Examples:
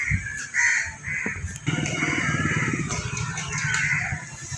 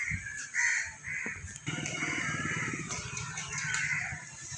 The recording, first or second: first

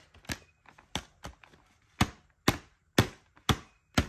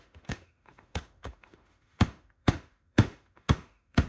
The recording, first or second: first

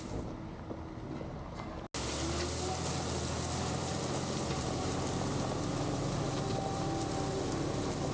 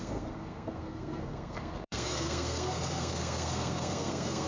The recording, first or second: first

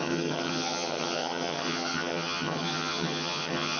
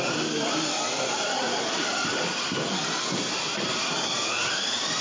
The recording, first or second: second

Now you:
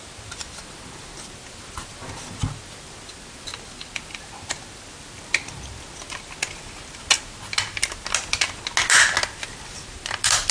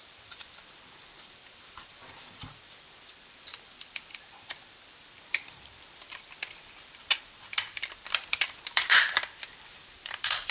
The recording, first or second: first